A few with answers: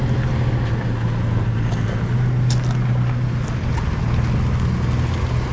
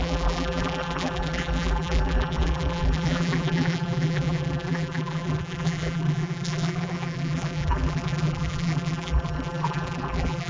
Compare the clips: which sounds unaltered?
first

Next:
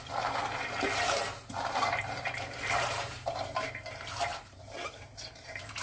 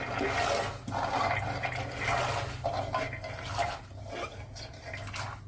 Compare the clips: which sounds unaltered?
second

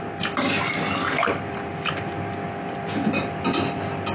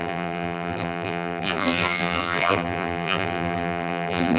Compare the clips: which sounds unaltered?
first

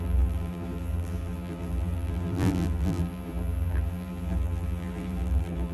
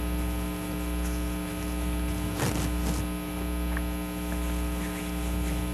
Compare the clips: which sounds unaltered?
second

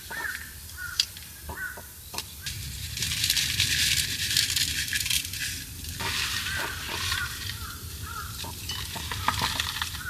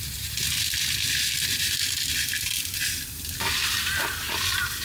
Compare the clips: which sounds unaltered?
second